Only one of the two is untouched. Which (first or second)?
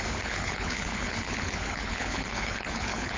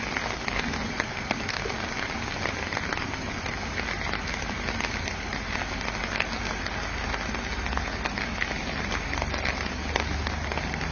second